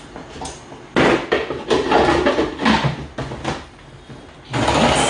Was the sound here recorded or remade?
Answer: recorded